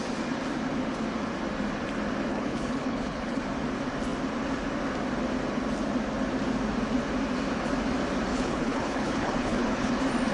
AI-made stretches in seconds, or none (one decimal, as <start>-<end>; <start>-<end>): 2.3-3.4; 8.3-9.9